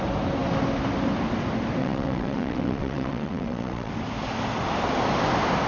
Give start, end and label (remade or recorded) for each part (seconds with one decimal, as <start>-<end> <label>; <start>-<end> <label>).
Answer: 0.0-1.8 recorded; 1.8-3.9 remade; 3.9-5.7 recorded